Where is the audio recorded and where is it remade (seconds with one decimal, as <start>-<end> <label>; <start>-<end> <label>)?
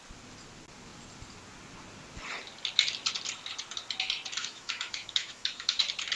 0.0-4.4 recorded; 4.4-5.8 remade; 5.8-6.2 recorded